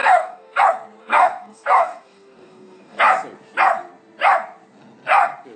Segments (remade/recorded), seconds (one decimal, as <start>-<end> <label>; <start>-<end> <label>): 0.0-0.6 remade; 0.6-1.0 recorded; 1.0-3.0 remade; 3.0-5.6 recorded